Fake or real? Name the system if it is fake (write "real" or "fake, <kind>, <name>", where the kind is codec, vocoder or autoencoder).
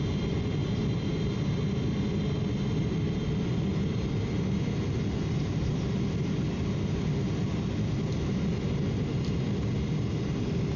real